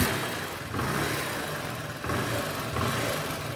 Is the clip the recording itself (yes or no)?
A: yes